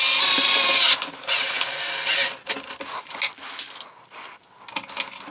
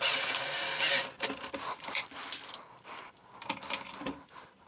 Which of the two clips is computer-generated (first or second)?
second